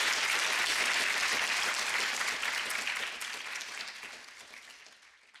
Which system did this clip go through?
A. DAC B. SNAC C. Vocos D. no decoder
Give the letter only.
D